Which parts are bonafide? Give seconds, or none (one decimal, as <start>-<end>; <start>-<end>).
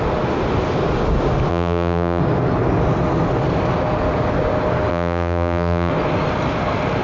0.0-1.5; 2.2-4.9; 5.9-7.0